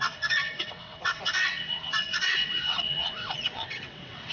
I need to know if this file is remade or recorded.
remade